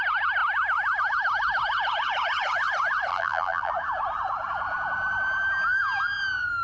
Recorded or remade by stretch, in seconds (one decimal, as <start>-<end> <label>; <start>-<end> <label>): 0.0-3.1 recorded; 3.1-3.7 remade; 3.7-6.6 recorded